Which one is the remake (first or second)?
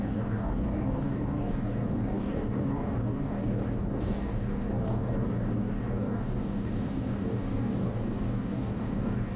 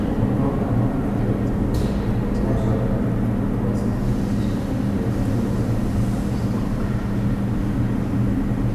first